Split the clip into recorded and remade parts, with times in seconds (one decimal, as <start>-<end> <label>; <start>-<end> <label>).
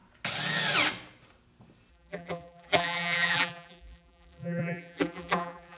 0.0-1.9 recorded; 1.9-5.8 remade